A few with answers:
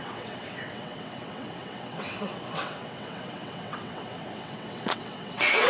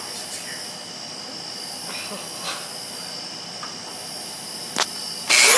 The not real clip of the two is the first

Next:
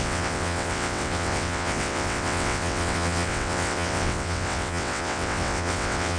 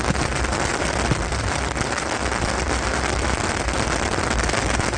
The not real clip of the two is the first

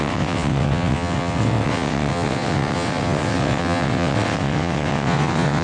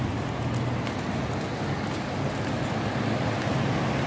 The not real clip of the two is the first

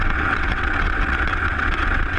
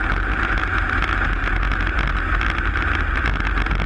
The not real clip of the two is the first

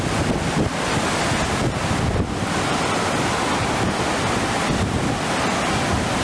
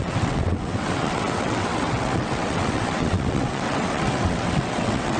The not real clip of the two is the second